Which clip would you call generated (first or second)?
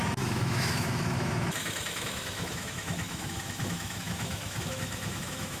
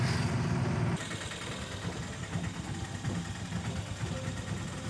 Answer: first